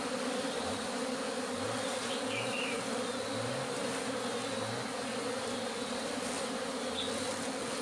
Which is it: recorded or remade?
recorded